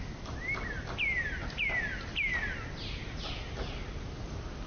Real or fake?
real